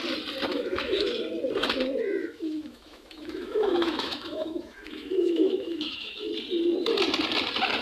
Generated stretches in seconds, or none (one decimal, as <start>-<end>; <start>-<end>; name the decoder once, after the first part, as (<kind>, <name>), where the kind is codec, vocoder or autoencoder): 0.5-1.1 (autoencoder, DAC-VAE); 2.2-6.3